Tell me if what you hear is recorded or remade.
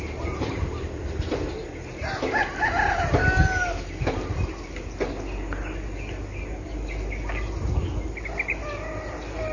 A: recorded